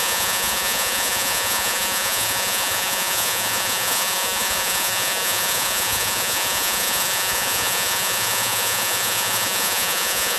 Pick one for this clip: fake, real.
fake